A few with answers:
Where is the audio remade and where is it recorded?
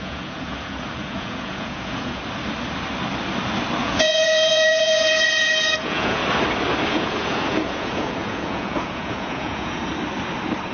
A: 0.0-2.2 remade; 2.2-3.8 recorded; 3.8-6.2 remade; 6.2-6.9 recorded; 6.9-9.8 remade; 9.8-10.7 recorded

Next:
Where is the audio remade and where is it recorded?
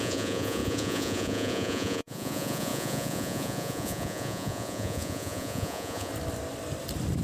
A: 0.0-6.1 remade; 6.1-7.2 recorded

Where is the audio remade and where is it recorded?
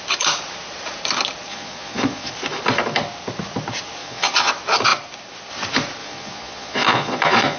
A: 0.0-1.5 recorded; 1.5-2.3 remade; 2.3-4.0 recorded; 4.0-4.5 remade; 4.5-6.0 recorded; 6.0-7.6 remade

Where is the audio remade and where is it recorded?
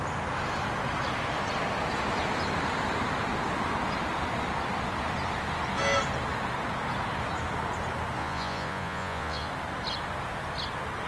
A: 0.0-8.2 recorded; 8.2-9.5 remade; 9.5-11.1 recorded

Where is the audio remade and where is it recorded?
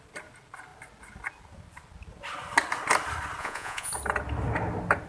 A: 0.0-3.4 recorded; 3.4-3.9 remade; 3.9-5.1 recorded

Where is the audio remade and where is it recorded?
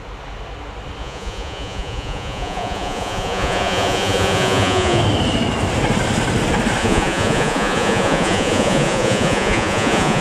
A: 0.0-1.0 recorded; 1.0-5.0 remade; 5.0-6.8 recorded; 6.8-10.2 remade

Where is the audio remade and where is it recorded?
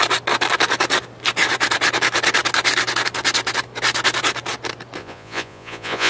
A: 0.0-5.0 recorded; 5.0-6.1 remade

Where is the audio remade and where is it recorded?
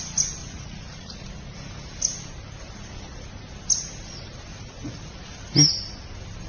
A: 0.0-0.4 recorded; 0.4-1.2 remade; 1.2-4.5 recorded; 4.5-5.2 remade; 5.2-6.5 recorded